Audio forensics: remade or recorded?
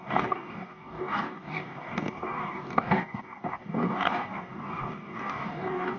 remade